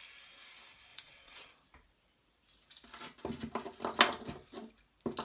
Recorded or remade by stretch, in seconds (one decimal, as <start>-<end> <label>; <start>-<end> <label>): 0.0-0.9 recorded; 0.9-1.5 remade; 1.5-5.2 recorded